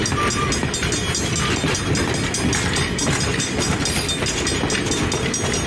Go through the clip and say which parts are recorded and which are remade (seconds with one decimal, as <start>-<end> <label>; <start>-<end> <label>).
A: 0.0-5.7 recorded